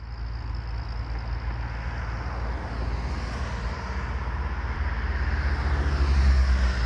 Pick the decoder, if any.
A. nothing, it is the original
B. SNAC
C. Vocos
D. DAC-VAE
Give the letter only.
A